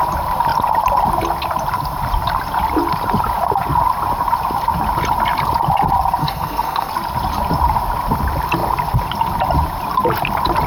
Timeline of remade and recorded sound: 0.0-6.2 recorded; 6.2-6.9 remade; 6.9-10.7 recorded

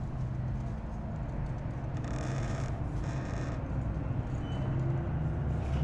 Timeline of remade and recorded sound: 0.0-1.9 recorded; 1.9-3.7 remade; 3.7-5.8 recorded

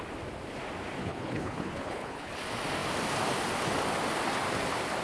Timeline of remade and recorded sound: 0.0-1.0 recorded; 1.0-2.3 remade; 2.3-5.0 recorded

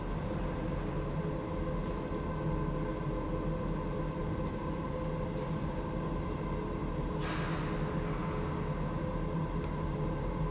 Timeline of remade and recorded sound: 0.0-10.5 recorded

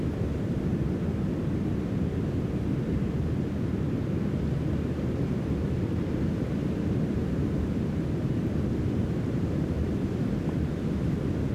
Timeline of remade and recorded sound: 0.0-6.6 recorded; 6.6-9.9 remade; 9.9-11.5 recorded

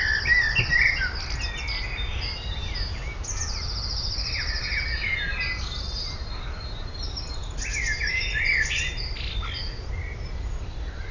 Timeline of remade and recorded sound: 0.0-11.1 recorded